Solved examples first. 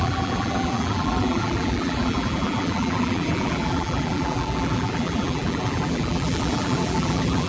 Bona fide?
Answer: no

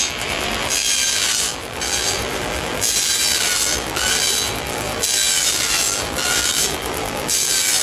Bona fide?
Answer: no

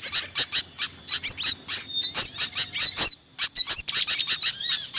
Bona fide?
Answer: yes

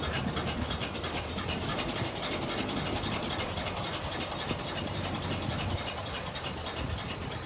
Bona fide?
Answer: no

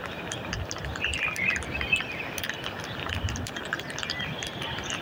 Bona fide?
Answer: no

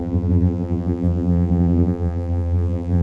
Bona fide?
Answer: no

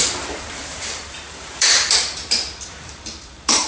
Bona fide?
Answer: no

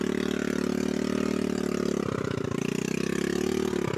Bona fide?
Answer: yes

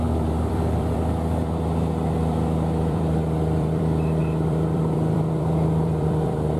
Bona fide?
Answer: no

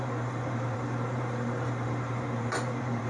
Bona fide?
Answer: no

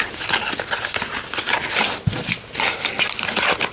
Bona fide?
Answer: yes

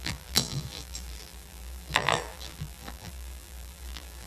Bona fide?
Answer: no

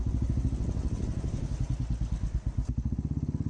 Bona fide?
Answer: yes